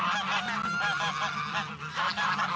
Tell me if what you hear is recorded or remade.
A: recorded